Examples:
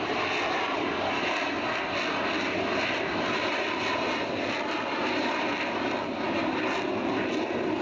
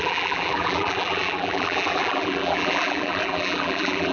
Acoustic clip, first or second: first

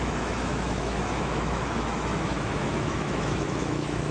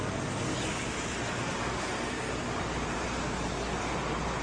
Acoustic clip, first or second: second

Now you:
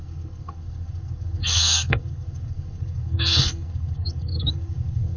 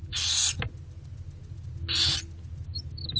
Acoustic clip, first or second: second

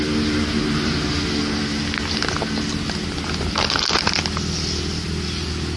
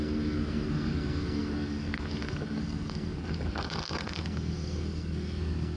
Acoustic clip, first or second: first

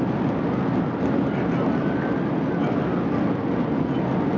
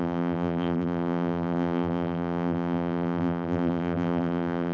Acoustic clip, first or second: first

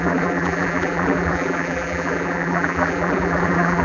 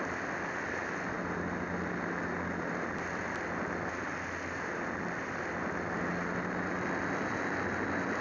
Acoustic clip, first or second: second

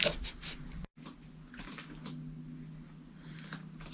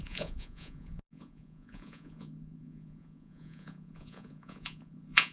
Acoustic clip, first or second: first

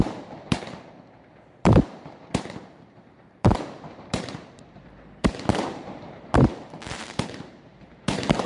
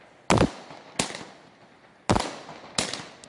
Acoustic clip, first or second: second